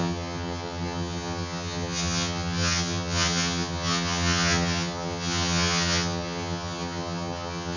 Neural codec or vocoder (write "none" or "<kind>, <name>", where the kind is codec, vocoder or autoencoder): vocoder, HiFi-GAN